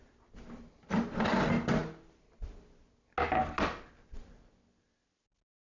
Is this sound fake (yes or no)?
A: no